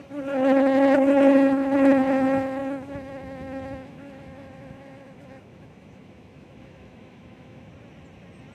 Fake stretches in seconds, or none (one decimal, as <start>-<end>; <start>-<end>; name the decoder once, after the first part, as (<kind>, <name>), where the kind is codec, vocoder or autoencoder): 2.6-7.7 (autoencoder, DAC-VAE)